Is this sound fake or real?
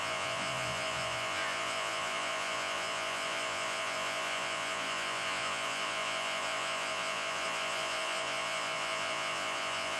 fake